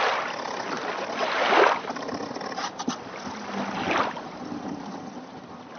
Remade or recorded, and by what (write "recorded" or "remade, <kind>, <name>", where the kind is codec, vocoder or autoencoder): recorded